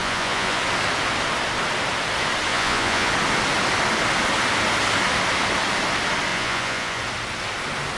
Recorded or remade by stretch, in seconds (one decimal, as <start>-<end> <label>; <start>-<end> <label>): 0.0-0.6 remade; 0.6-2.5 recorded; 2.5-3.1 remade; 3.1-6.3 recorded; 6.3-7.0 remade; 7.0-8.0 recorded